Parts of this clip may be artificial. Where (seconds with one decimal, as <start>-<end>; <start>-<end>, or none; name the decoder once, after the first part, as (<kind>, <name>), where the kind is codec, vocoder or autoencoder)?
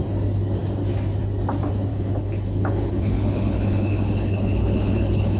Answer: 1.9-5.4 (codec, HILCodec)